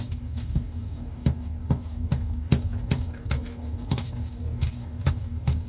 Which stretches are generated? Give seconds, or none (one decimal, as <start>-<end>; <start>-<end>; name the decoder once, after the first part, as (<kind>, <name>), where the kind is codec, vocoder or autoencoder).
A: 0.0-5.7 (codec, DAC)